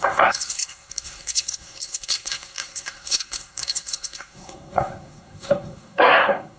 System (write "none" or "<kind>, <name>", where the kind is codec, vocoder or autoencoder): codec, SNAC